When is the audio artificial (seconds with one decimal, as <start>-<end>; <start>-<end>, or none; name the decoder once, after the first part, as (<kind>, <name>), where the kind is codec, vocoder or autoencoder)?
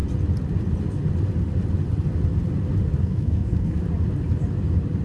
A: 3.0-3.8 (codec, SNAC)